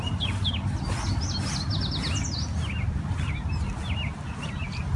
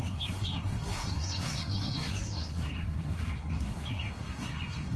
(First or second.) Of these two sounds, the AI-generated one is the second